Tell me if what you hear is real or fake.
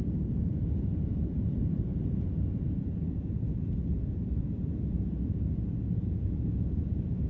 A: fake